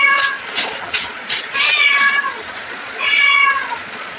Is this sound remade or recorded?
remade